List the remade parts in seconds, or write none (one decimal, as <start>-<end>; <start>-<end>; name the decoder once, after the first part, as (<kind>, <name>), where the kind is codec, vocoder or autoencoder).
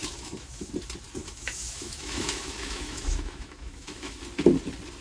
0.0-0.7 (autoencoder, DAC-VAE); 1.2-4.2